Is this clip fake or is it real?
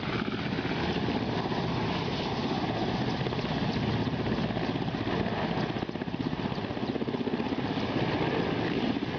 real